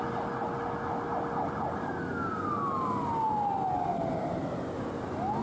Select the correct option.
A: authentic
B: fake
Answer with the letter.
A